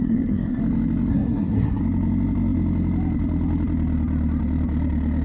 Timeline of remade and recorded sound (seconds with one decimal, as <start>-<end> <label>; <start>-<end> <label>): 0.0-0.6 remade; 0.6-1.1 recorded; 1.1-1.8 remade; 1.8-5.2 recorded